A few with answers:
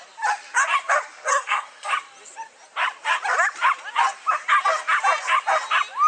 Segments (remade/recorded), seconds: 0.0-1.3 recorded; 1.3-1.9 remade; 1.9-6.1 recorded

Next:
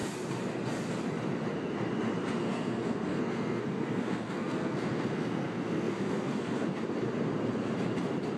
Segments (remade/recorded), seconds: 0.0-2.4 recorded; 2.4-6.8 remade; 6.8-8.4 recorded

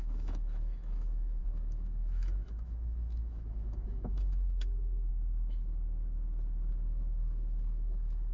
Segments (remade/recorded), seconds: 0.0-5.1 remade; 5.1-6.7 recorded; 6.7-8.3 remade

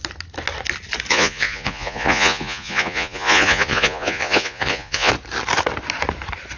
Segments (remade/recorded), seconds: 0.0-1.1 recorded; 1.1-5.1 remade; 5.1-6.6 recorded

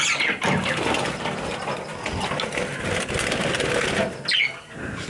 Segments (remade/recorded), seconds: 0.0-5.1 recorded

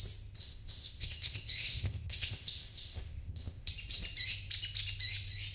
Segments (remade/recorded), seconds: 0.0-0.4 recorded; 0.4-3.7 remade; 3.7-5.5 recorded

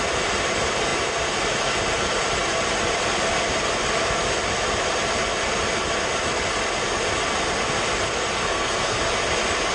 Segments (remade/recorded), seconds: 0.0-8.4 recorded; 8.4-9.0 remade; 9.0-9.7 recorded